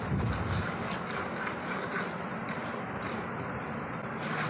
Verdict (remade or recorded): recorded